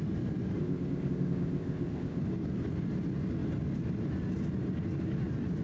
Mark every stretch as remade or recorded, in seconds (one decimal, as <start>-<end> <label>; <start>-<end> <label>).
0.0-0.6 recorded; 0.6-2.2 remade; 2.2-5.6 recorded